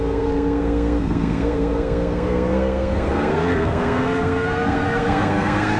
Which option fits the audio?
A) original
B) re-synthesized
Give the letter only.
B